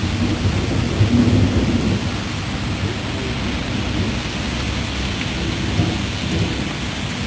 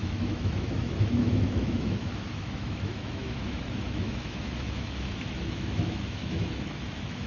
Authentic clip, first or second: first